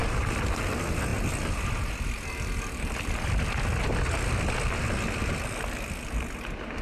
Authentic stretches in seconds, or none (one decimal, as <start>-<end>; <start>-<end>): 0.6-6.8